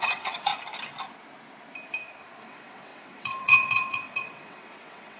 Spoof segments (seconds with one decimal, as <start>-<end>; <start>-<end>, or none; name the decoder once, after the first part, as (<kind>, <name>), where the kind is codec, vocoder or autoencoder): 0.0-0.5 (vocoder, WaveNeXt); 2.4-5.2